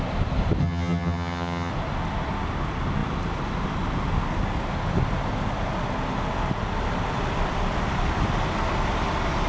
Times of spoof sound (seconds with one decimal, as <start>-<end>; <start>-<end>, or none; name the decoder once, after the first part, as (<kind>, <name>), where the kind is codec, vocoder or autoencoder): 0.6-1.7 (vocoder, HiFi-GAN)